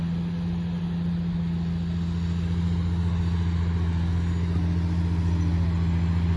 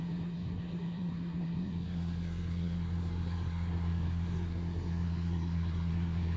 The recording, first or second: first